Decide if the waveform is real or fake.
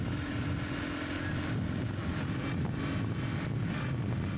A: real